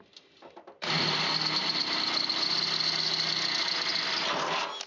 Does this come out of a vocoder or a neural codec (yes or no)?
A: no